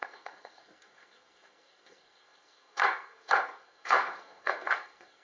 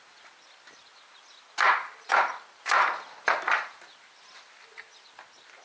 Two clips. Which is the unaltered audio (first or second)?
second